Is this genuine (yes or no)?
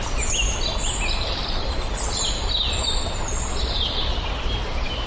yes